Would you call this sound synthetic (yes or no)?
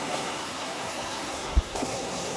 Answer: yes